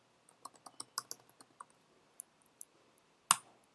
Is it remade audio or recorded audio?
recorded